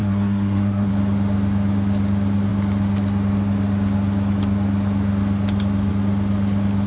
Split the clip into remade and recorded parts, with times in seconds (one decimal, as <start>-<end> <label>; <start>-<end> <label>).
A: 0.0-0.9 remade; 0.9-6.9 recorded